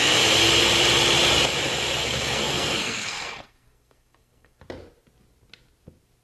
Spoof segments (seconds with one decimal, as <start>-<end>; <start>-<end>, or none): 2.0-4.6